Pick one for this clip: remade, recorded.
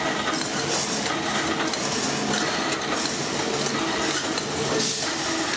recorded